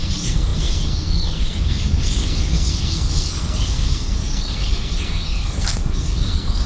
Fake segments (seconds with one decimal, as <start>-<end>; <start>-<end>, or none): 0.0-6.7

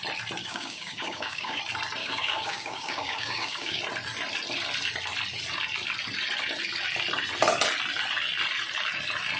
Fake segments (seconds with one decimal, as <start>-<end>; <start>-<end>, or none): 0.4-1.6; 2.0-3.8